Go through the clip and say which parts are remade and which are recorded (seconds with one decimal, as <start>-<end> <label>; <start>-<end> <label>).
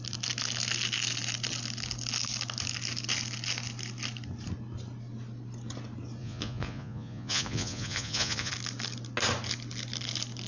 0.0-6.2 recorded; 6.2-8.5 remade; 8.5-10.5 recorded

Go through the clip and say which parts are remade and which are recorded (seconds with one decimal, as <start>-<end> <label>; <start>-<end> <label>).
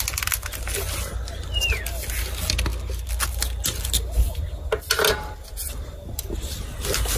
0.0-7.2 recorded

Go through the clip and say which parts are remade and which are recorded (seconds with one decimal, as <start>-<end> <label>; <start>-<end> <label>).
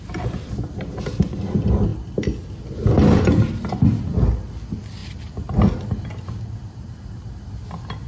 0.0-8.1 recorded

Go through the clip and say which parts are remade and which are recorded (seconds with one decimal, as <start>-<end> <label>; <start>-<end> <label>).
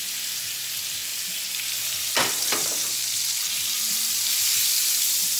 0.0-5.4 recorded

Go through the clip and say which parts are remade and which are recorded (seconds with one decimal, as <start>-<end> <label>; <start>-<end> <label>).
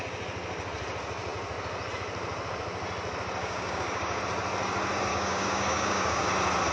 0.0-3.4 recorded; 3.4-4.2 remade; 4.2-5.1 recorded; 5.1-6.3 remade; 6.3-6.7 recorded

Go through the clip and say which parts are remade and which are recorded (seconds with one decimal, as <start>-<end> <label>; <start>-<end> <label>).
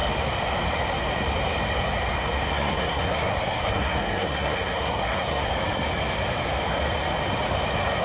0.0-2.5 recorded; 2.5-5.5 remade; 5.5-8.0 recorded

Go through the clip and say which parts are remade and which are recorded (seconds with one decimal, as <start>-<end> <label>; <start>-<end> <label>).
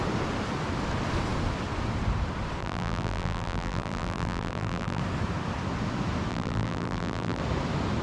0.0-2.6 recorded; 2.6-5.0 remade; 5.0-6.3 recorded; 6.3-7.4 remade; 7.4-8.0 recorded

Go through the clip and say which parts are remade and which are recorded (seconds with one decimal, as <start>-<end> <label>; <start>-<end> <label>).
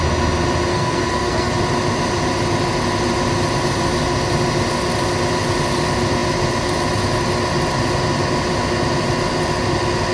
0.0-0.7 recorded; 0.7-1.5 remade; 1.5-10.1 recorded